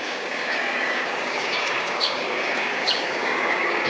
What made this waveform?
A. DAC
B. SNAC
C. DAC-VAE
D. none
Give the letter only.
A